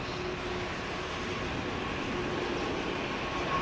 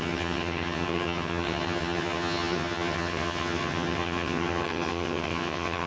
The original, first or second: first